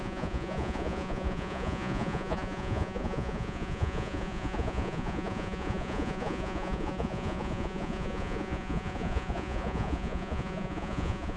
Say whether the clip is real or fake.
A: fake